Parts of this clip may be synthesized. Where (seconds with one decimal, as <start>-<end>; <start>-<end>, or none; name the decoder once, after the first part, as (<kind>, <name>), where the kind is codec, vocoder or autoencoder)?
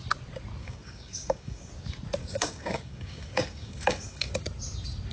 0.6-1.7 (codec, DAC); 2.2-4.3